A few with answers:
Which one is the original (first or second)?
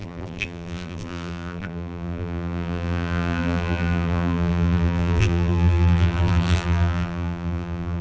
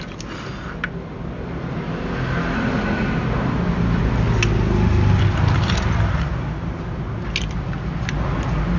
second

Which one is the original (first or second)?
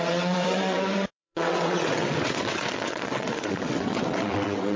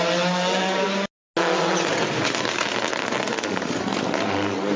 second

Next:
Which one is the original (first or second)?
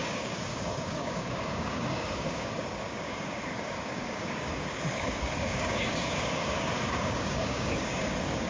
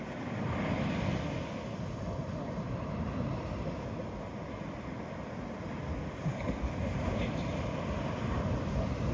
second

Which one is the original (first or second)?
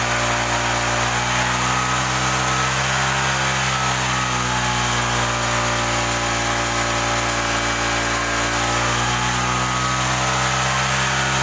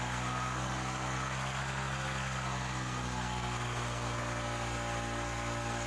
first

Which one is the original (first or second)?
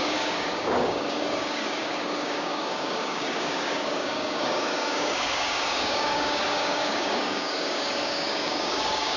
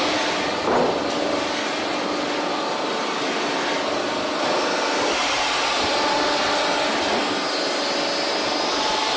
second